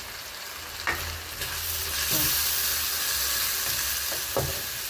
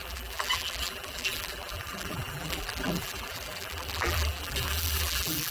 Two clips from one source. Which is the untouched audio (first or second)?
first